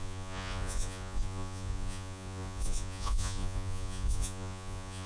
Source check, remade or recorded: remade